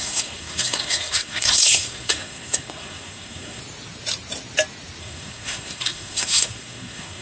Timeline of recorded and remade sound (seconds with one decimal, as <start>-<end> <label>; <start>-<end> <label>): 0.0-3.6 remade; 3.6-5.0 recorded; 5.0-7.2 remade